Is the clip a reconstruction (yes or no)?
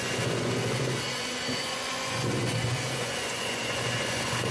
yes